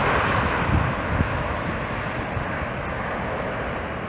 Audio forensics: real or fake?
real